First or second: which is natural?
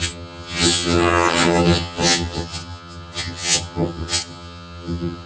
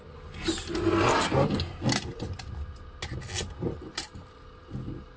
second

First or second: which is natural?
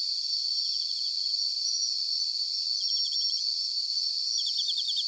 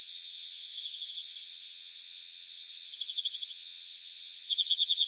first